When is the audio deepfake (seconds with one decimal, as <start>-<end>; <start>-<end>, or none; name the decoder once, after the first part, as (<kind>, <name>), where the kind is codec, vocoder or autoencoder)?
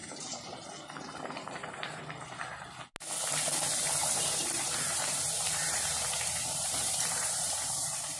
0.0-2.0 (vocoder, BigVGAN v2); 4.0-8.2